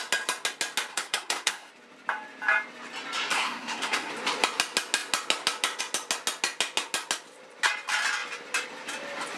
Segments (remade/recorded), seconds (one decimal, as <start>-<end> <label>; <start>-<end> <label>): 0.0-0.9 recorded; 0.9-1.7 remade; 1.7-3.3 recorded; 3.3-4.1 remade; 4.1-9.4 recorded